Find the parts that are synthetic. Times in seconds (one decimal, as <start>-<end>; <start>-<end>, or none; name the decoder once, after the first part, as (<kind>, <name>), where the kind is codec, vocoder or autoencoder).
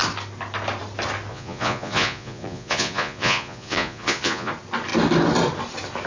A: 1.3-4.5 (vocoder, Vocos)